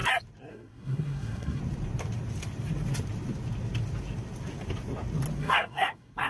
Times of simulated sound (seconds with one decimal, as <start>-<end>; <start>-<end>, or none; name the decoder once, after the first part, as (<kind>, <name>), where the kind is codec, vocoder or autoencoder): 0.5-1.6 (codec, SNAC); 5.4-6.3